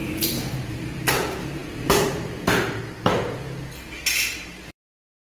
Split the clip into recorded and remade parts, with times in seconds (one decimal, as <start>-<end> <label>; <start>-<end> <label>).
0.0-5.2 remade